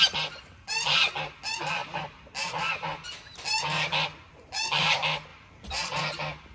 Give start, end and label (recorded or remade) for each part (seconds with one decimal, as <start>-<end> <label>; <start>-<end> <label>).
0.0-5.3 recorded; 5.3-6.0 remade; 6.0-6.5 recorded